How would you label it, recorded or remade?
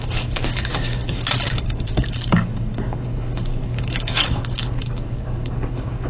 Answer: remade